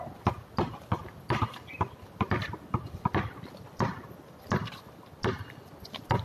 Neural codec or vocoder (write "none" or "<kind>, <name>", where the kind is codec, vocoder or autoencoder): vocoder, BigVGAN v2